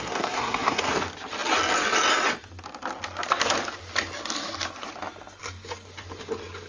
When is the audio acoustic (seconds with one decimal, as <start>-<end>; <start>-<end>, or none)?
0.8-6.7